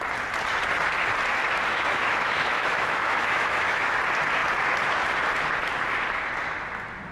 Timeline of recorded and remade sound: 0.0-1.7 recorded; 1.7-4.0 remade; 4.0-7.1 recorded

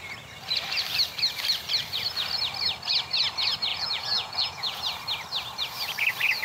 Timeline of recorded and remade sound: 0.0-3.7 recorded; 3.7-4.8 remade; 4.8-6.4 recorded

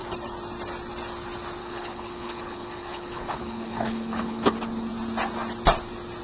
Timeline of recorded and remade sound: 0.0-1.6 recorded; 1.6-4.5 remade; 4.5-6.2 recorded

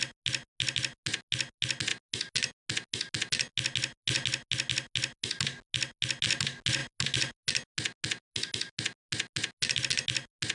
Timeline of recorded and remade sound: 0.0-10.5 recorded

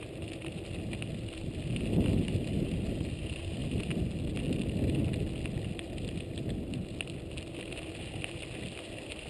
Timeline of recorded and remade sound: 0.0-9.3 recorded